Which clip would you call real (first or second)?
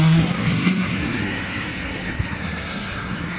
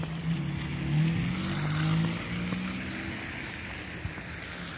second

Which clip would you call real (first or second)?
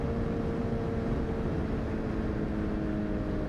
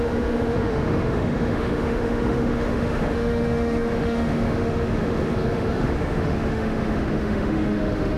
first